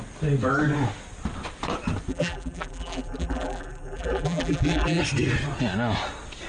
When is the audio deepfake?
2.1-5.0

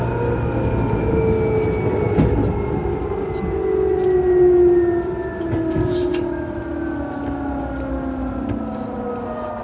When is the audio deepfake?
none